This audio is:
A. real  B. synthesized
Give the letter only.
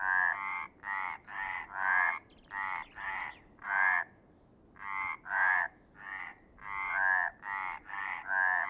A